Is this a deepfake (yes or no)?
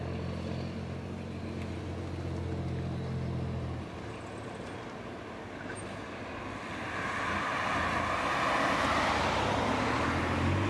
no